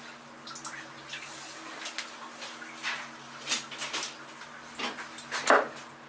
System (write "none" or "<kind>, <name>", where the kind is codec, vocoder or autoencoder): none